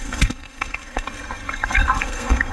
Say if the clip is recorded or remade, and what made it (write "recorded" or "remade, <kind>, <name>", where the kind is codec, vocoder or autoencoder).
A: remade, codec, SNAC